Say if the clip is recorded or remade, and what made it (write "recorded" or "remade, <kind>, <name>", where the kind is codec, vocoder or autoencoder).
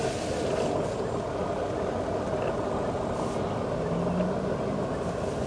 recorded